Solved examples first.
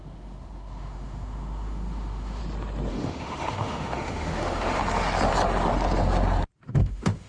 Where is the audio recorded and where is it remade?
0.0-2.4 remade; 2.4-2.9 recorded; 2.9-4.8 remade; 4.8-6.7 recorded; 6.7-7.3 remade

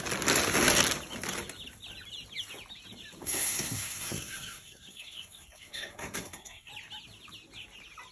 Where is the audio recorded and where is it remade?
0.0-3.2 recorded; 3.2-6.7 remade; 6.7-8.1 recorded

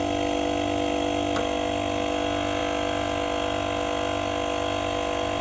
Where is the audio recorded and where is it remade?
0.0-5.4 recorded

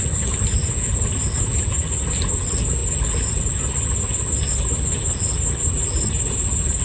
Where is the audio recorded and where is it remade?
0.0-0.6 recorded; 0.6-1.1 remade; 1.1-6.8 recorded